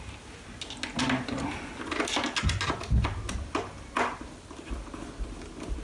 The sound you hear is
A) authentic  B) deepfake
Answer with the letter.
A